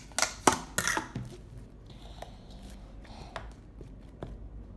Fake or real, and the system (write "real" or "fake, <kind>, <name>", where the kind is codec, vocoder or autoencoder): real